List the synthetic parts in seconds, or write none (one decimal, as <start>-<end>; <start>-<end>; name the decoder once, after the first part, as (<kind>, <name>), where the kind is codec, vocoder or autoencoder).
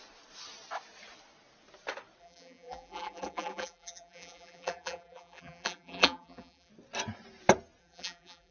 2.2-6.7 (vocoder, BigVGAN v2); 7.8-8.5